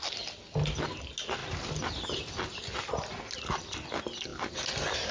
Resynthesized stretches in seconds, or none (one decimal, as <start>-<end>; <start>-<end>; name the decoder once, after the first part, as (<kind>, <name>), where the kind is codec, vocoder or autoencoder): none